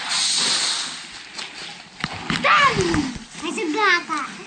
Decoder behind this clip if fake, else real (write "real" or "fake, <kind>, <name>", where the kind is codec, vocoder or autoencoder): real